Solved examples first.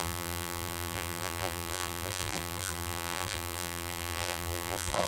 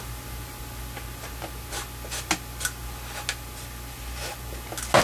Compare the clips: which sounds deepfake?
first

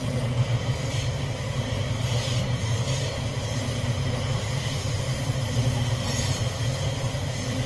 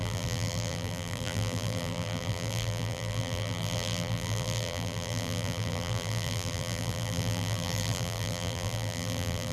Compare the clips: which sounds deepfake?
second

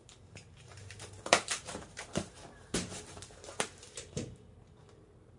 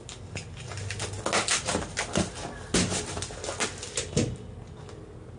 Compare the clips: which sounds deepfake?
first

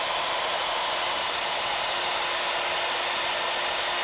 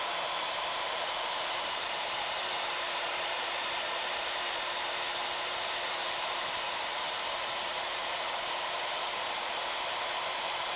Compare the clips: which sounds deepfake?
second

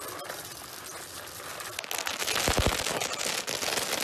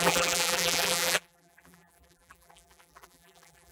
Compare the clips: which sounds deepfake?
second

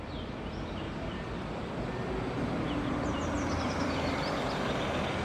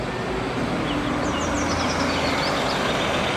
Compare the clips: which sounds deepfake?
first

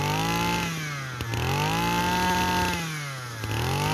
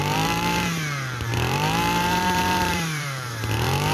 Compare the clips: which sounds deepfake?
second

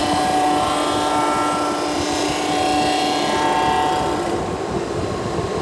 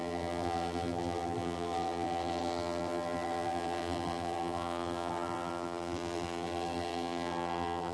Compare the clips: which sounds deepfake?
second